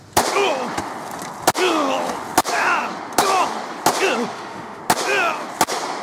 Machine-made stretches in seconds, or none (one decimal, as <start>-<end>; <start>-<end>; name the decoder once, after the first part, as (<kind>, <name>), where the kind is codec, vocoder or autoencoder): 4.3-4.8 (autoencoder, DAC-VAE)